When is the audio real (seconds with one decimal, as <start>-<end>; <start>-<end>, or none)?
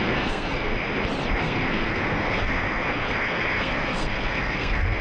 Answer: 0.7-1.4